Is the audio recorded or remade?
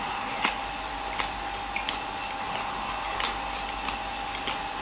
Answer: recorded